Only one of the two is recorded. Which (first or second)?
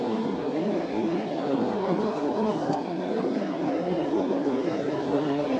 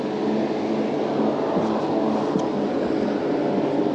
second